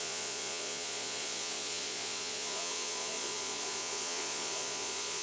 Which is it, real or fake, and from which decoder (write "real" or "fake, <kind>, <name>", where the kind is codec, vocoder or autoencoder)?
fake, vocoder, Vocos